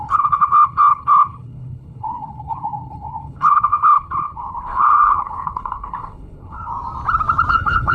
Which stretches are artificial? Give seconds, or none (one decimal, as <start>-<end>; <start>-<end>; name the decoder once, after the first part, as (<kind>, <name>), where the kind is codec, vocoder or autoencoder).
0.0-6.7 (codec, HILCodec); 7.5-7.9